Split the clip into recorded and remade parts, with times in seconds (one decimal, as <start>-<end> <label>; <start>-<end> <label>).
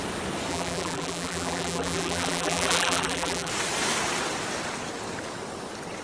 0.0-0.5 recorded; 0.5-3.5 remade; 3.5-6.0 recorded